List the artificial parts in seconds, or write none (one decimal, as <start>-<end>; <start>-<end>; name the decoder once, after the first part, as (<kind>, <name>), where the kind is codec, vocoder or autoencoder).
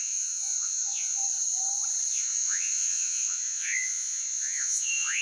0.0-1.2 (vocoder, Vocos); 2.1-5.2